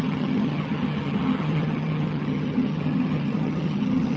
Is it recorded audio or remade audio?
remade